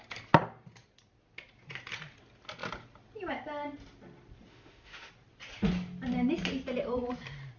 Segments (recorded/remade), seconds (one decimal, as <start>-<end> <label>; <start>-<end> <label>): 0.0-4.5 recorded; 4.5-5.1 remade; 5.1-7.6 recorded